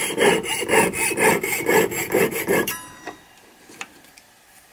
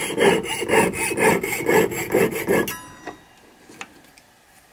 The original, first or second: second